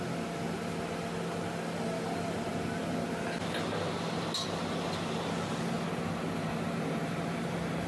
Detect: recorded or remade recorded